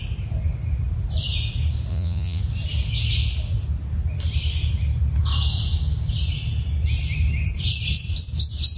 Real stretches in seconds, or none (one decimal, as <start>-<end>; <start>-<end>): 0.0-1.9; 2.4-8.8